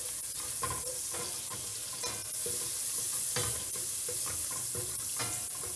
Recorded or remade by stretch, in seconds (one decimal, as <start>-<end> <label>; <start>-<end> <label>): 0.0-5.8 recorded